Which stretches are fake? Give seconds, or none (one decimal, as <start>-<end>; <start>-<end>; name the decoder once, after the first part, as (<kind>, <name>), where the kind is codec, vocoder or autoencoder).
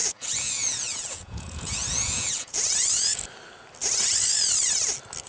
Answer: 0.0-3.2 (vocoder, Vocos)